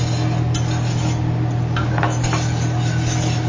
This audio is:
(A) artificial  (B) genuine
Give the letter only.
B